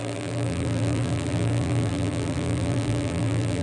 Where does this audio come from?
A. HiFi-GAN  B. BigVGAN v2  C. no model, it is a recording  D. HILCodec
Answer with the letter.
B